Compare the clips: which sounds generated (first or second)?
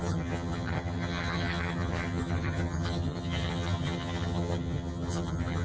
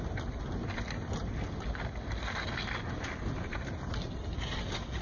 first